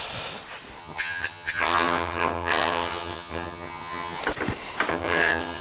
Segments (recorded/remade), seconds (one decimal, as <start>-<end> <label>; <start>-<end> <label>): 0.0-0.8 recorded; 0.8-4.2 remade; 4.2-4.9 recorded; 4.9-5.6 remade